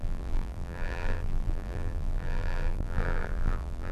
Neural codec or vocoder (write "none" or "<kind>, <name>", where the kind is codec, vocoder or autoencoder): vocoder, BigVGAN v2